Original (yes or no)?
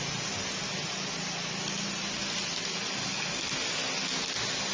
yes